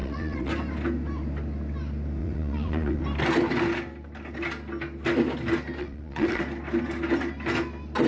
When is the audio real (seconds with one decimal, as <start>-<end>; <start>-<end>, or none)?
0.5-2.2; 3.0-5.8; 6.4-8.1